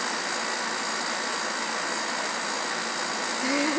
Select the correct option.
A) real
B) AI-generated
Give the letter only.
A